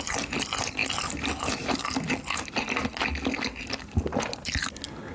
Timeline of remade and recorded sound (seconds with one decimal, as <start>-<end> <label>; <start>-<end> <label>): 0.0-5.1 recorded